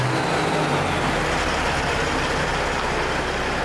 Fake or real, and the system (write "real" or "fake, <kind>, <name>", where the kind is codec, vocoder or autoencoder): real